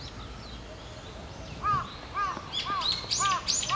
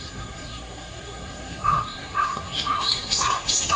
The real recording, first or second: first